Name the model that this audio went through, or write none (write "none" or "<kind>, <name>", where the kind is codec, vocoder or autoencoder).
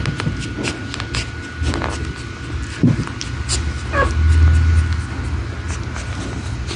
none